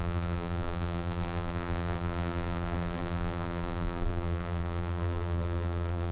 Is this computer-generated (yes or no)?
yes